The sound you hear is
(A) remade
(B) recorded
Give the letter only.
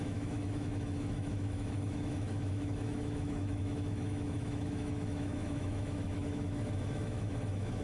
A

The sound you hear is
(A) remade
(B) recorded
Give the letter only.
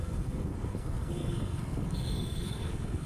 A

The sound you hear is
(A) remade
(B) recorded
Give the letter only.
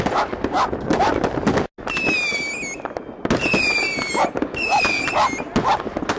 B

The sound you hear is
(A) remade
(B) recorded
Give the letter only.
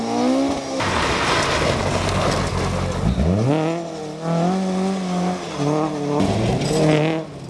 B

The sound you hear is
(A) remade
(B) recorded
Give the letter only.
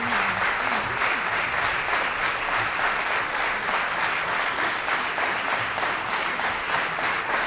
B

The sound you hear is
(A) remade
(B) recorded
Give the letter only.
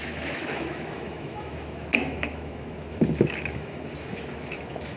A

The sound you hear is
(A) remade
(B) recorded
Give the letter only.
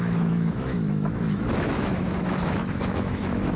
A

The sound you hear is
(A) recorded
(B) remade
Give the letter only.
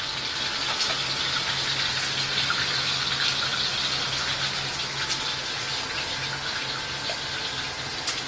A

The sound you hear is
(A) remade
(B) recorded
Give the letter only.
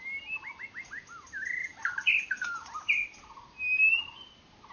B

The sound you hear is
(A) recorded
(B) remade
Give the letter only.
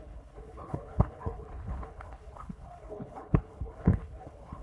B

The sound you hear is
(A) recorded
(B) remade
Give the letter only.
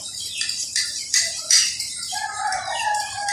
B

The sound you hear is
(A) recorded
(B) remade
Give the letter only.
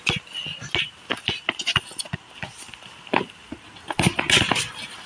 A